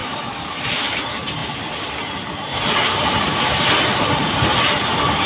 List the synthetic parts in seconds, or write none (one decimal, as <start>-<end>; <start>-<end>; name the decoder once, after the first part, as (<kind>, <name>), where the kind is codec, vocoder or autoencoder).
0.0-0.7 (autoencoder, DAC-VAE)